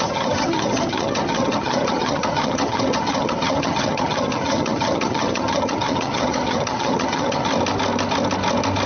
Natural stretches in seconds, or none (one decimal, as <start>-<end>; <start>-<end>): 7.5-8.9